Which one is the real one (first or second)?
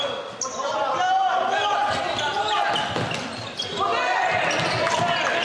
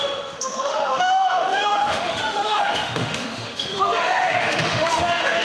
first